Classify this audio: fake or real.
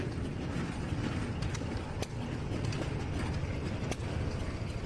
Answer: real